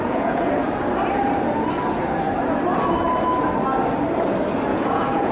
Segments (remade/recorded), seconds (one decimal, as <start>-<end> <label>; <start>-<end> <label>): 0.0-0.5 remade; 0.5-4.7 recorded; 4.7-5.3 remade